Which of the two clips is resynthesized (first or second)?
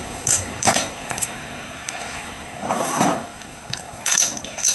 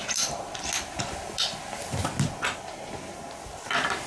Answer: first